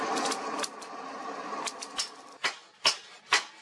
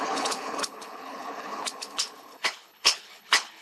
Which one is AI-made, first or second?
second